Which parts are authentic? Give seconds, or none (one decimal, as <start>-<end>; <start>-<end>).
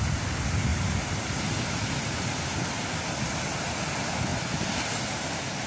0.0-0.7; 2.5-4.3